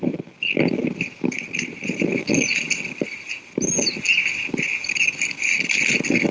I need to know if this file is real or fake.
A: real